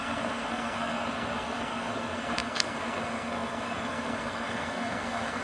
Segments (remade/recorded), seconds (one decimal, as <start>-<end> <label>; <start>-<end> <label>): 0.0-5.4 remade